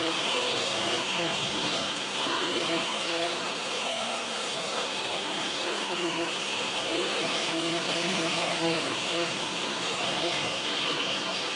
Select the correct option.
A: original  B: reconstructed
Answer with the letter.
B